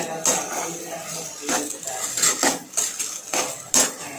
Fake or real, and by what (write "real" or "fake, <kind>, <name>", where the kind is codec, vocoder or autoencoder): real